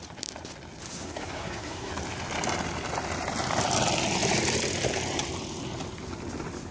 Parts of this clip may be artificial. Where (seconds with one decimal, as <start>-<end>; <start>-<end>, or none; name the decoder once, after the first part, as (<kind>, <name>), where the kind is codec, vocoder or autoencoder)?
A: 0.9-1.9 (codec, SNAC)